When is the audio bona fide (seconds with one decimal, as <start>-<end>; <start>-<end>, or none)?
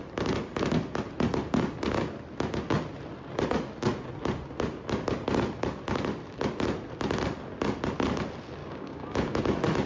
0.0-8.6; 9.4-9.9